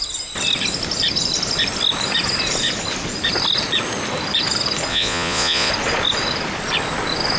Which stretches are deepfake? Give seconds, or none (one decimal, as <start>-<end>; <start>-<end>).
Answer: 4.9-5.7

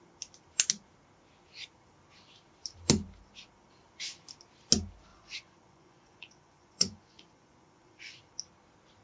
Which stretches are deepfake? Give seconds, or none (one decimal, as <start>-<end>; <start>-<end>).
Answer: 5.1-8.2

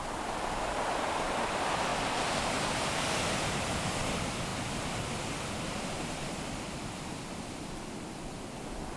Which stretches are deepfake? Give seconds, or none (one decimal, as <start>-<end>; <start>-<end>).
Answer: 0.0-1.9; 2.5-4.5; 5.9-9.0

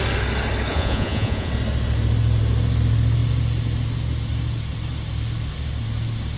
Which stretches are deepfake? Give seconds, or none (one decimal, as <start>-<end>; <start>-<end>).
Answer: 0.7-1.5

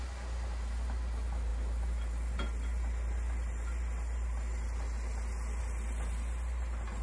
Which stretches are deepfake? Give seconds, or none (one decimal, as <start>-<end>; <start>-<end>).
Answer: none

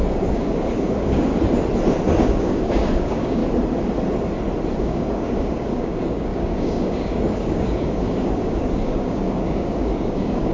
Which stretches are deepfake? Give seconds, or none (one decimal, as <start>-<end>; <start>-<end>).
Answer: 0.0-1.3; 2.2-3.4; 4.8-10.5

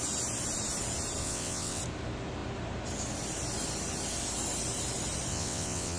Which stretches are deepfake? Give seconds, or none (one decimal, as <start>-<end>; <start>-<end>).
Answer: 1.2-1.8; 5.3-6.0